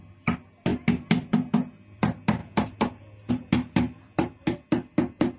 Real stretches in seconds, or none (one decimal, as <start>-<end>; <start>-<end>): 0.0-5.4